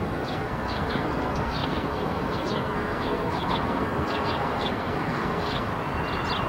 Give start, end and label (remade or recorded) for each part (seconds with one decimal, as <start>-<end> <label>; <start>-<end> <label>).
0.0-5.7 remade; 5.7-6.5 recorded

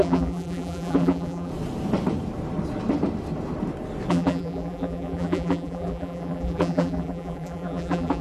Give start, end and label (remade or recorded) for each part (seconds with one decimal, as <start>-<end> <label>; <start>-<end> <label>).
0.0-1.5 remade; 1.5-4.1 recorded; 4.1-8.2 remade

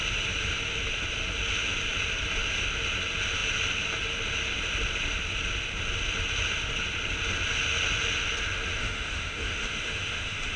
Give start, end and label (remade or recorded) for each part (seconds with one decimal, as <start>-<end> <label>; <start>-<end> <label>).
0.0-8.8 recorded; 8.8-10.6 remade